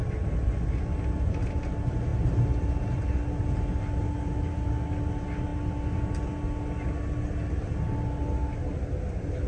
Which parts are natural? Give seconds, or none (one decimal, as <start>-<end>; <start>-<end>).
0.0-9.5